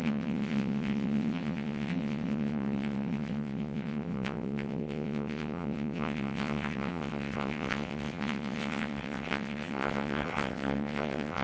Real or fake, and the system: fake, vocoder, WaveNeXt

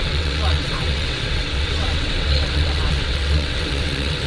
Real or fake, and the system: fake, vocoder, WaveNeXt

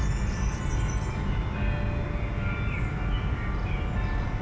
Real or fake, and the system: real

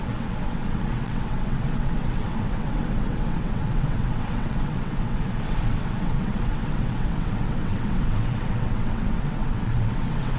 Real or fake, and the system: fake, vocoder, WaveNeXt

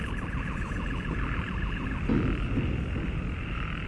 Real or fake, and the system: real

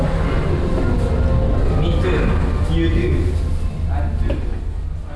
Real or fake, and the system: real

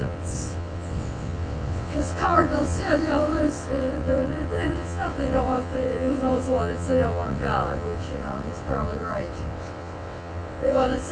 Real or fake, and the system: fake, vocoder, WaveNeXt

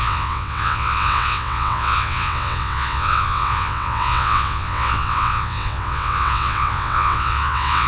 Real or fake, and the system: fake, vocoder, WaveNeXt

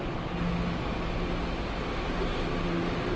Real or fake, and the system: real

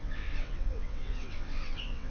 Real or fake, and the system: fake, vocoder, WaveNeXt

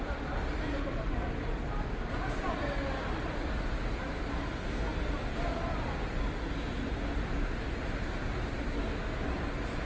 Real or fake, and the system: real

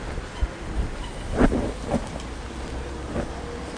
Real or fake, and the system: real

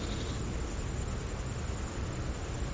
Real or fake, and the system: real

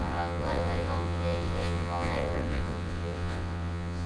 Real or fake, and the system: fake, vocoder, WaveNeXt